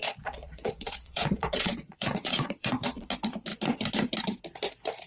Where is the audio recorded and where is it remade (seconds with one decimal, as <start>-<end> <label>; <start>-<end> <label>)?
0.0-3.1 remade; 3.1-5.1 recorded